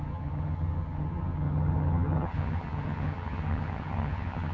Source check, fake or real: fake